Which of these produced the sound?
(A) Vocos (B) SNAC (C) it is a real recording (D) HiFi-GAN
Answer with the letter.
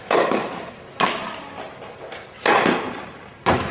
C